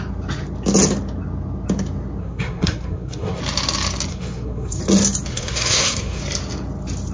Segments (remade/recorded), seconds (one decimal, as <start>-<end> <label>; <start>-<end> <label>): 0.0-2.2 recorded; 2.2-3.4 remade; 3.4-4.1 recorded; 4.1-4.8 remade; 4.8-5.3 recorded; 5.3-6.2 remade; 6.2-7.1 recorded